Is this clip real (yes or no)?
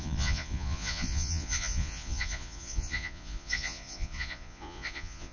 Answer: no